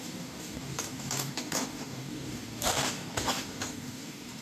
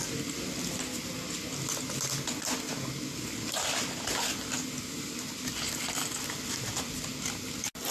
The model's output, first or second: first